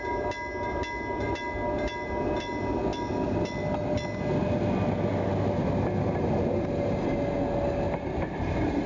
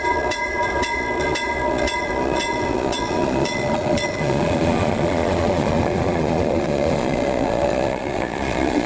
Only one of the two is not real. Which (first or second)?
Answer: second